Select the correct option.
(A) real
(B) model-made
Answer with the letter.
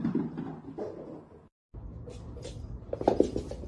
A